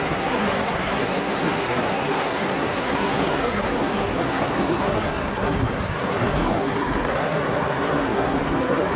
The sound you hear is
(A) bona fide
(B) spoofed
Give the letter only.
B